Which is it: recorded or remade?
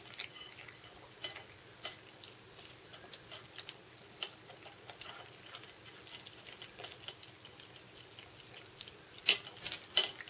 recorded